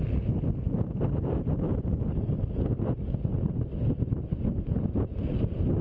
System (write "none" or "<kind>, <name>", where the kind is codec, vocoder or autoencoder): none